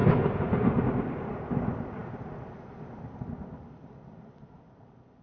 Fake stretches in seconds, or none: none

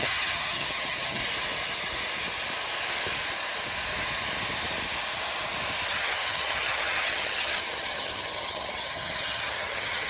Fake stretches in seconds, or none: 0.0-1.2 (vocoder, HiFi-GAN); 5.9-10.1

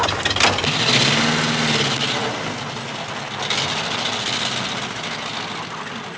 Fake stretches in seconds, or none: none

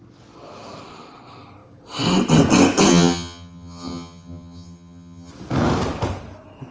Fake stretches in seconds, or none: 2.9-5.3 (vocoder, HiFi-GAN)

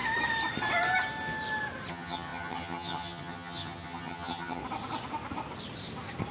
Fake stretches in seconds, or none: 1.9-4.6 (vocoder, HiFi-GAN)